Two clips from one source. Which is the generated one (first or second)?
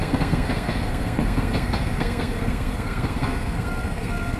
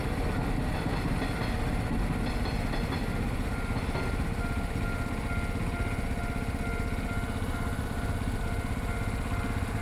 first